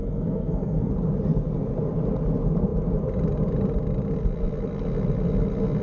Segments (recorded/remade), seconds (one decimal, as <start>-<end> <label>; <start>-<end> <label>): 0.0-0.9 remade; 0.9-5.8 recorded